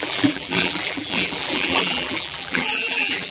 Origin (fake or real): fake